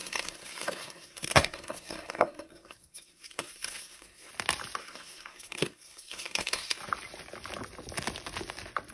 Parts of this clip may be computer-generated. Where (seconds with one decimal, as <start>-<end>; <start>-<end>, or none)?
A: 0.0-4.3; 4.8-6.8